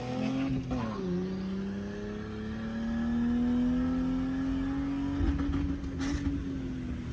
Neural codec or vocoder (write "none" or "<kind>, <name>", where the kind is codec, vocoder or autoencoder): none